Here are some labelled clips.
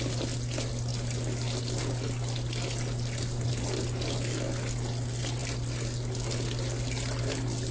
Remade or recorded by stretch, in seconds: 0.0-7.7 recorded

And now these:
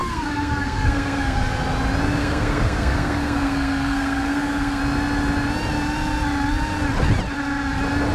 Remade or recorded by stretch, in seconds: 0.0-1.4 remade; 1.4-2.2 recorded; 2.2-4.8 remade; 4.8-8.1 recorded

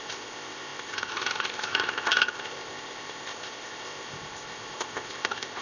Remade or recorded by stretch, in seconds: 0.0-5.6 remade

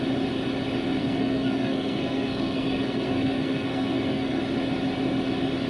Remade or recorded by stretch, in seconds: 0.0-1.0 recorded; 1.0-4.4 remade; 4.4-5.7 recorded

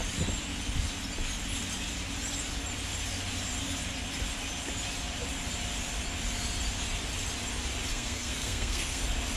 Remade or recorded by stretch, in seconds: 0.0-7.9 recorded; 7.9-9.0 remade; 9.0-9.4 recorded

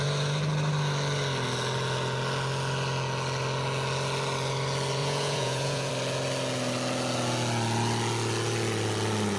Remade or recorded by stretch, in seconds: 0.0-5.0 recorded; 5.0-5.9 remade; 5.9-9.4 recorded

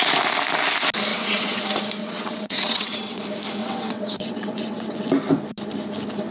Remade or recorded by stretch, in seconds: 0.0-1.1 recorded; 1.1-1.6 remade; 1.6-2.0 recorded; 2.0-3.2 remade; 3.2-3.6 recorded; 3.6-5.1 remade; 5.1-6.3 recorded